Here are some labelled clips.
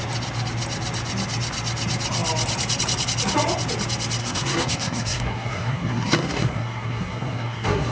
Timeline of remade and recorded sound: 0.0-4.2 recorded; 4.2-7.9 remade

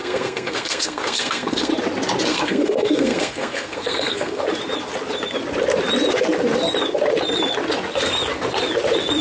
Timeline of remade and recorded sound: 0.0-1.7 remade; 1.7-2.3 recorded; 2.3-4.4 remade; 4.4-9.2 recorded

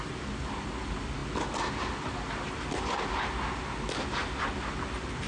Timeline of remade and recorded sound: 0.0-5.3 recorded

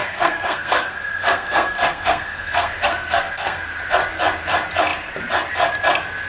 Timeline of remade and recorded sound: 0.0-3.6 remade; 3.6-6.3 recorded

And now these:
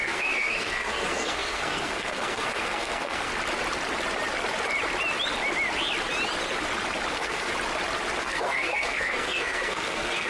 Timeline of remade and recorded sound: 0.0-3.3 remade; 3.3-7.1 recorded; 7.1-7.5 remade; 7.5-8.2 recorded; 8.2-10.3 remade

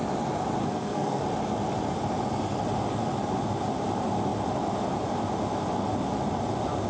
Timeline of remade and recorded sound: 0.0-0.6 recorded; 0.6-1.2 remade; 1.2-6.9 recorded

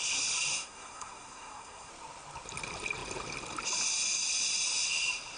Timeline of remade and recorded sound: 0.0-0.5 recorded; 0.5-1.9 remade; 1.9-5.4 recorded

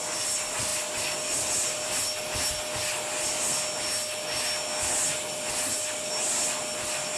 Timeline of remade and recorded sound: 0.0-7.2 recorded